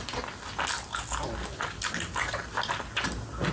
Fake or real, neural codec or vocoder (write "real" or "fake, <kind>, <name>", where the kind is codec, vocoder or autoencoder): real